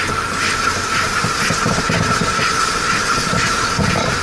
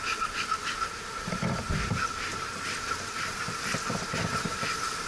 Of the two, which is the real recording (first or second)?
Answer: first